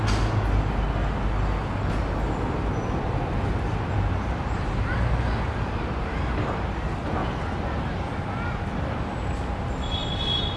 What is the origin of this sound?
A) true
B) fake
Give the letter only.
A